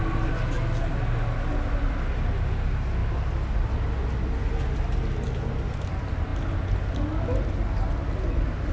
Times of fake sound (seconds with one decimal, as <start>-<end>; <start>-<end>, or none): none